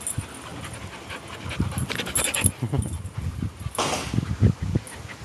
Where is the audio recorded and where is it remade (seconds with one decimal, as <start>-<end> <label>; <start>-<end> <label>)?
0.0-5.2 recorded